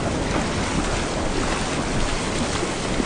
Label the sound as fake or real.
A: real